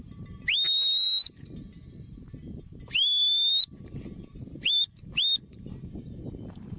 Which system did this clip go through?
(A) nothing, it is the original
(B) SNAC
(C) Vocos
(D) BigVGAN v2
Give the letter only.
D